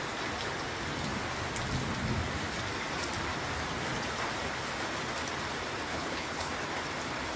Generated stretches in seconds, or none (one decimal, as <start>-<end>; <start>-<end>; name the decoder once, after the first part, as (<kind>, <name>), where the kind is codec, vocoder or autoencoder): 5.9-6.5 (codec, HILCodec)